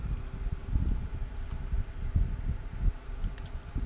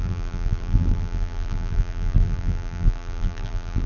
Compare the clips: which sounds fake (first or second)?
second